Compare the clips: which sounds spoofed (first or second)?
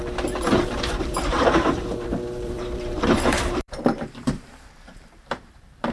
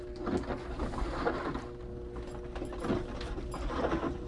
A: first